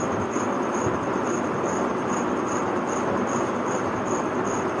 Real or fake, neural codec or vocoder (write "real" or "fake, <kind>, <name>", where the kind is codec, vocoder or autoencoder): real